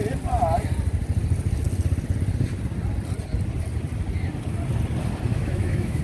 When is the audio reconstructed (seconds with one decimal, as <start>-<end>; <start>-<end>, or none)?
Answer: 5.3-6.0